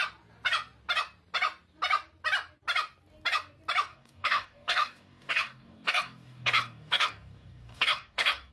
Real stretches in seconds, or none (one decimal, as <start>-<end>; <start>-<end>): 0.0-3.9